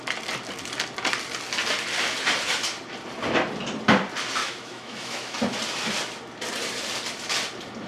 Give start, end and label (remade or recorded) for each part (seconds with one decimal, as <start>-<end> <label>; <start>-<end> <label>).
0.0-4.4 recorded; 4.4-5.4 remade; 5.4-7.9 recorded